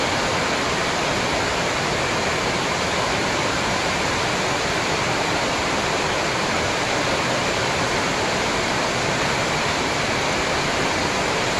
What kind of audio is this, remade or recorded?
remade